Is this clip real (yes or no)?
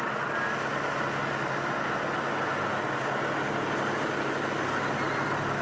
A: yes